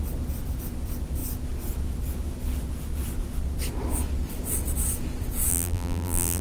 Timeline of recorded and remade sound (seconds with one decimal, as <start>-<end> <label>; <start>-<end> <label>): 0.0-5.5 recorded; 5.5-6.4 remade

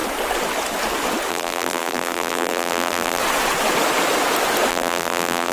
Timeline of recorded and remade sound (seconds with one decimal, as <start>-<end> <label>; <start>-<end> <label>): 0.0-1.3 recorded; 1.3-3.2 remade; 3.2-4.7 recorded; 4.7-5.5 remade

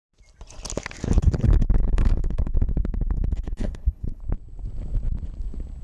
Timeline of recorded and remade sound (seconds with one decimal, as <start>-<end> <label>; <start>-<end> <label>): 0.0-1.2 recorded; 1.2-4.2 remade; 4.2-5.8 recorded

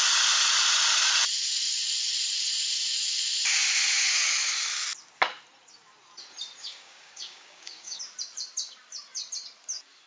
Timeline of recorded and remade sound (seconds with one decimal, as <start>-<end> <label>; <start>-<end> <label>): 0.0-6.6 recorded; 6.6-8.0 remade; 8.0-10.1 recorded